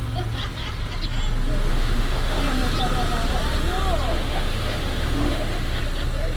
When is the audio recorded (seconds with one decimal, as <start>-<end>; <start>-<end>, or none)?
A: 0.0-1.7; 2.4-4.1; 5.8-6.4